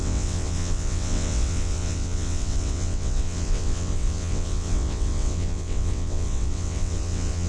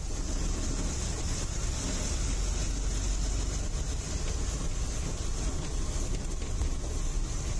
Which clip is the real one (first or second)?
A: second